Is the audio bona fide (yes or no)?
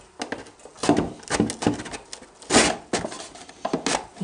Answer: yes